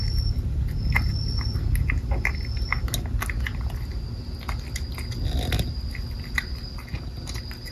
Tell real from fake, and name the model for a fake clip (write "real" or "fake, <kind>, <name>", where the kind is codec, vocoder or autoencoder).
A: real